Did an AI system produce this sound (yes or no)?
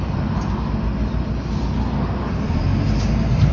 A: no